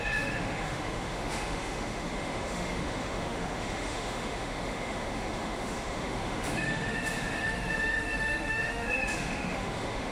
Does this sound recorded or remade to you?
remade